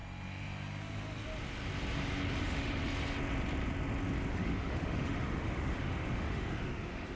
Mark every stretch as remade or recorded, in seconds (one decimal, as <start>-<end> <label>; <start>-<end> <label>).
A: 0.0-2.4 recorded; 2.4-2.8 remade; 2.8-4.3 recorded; 4.3-7.2 remade